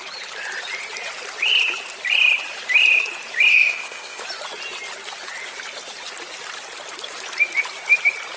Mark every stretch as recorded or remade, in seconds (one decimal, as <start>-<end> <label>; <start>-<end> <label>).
0.0-3.5 recorded; 3.5-4.2 remade; 4.2-8.4 recorded